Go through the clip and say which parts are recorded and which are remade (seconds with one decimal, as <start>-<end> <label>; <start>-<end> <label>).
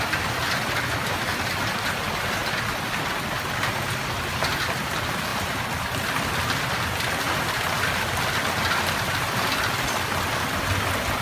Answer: 0.0-11.2 recorded